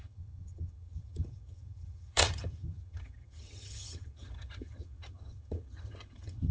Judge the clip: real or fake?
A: fake